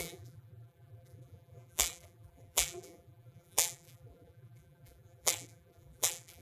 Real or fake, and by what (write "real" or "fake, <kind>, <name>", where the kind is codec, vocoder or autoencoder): fake, vocoder, BigVGAN v2